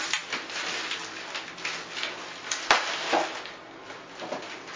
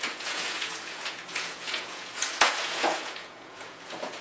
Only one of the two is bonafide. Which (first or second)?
first